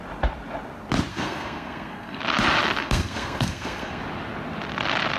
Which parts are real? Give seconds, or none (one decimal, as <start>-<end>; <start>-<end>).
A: 0.0-1.1; 2.2-2.8; 4.0-5.2